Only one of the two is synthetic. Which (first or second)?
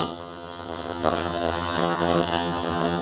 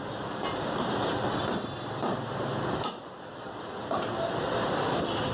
first